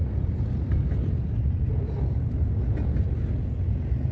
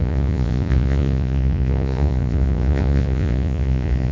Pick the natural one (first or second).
first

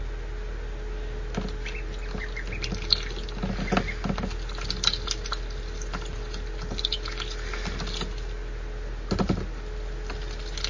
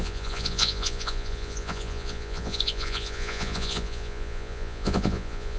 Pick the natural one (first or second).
first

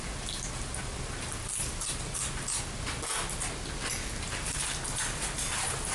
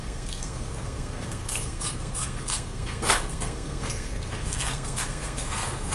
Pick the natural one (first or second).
first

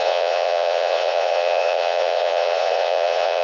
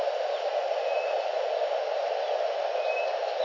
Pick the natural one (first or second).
second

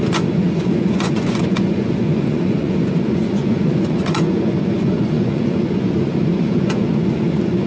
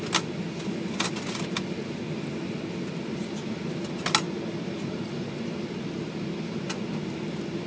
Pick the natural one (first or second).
second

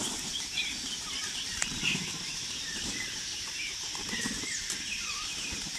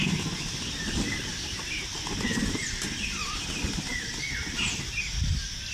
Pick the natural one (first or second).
second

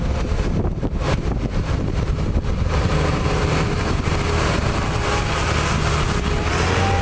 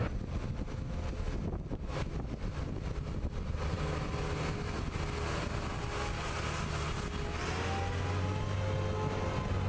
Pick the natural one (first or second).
second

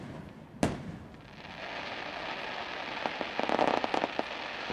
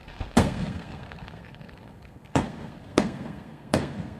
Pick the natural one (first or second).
first